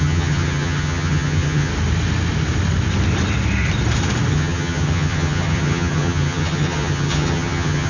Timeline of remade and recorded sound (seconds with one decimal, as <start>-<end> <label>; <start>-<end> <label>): 0.0-1.7 remade; 1.7-4.3 recorded; 4.3-7.9 remade